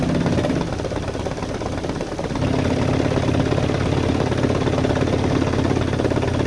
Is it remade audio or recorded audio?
recorded